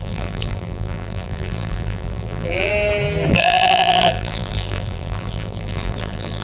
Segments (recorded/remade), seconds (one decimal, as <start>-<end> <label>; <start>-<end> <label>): 0.0-2.7 remade; 2.7-3.3 recorded; 3.3-6.4 remade